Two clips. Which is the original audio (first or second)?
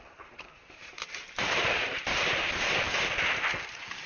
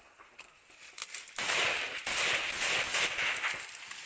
second